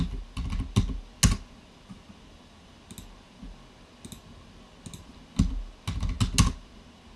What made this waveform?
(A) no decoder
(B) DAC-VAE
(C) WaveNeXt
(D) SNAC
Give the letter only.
A